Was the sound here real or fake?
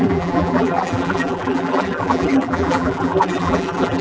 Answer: fake